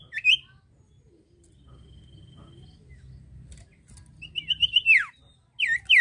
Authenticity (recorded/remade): recorded